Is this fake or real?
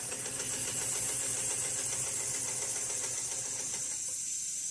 real